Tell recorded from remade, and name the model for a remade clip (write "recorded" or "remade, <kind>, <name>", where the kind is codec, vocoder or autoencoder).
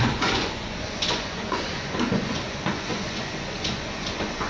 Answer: remade, vocoder, Vocos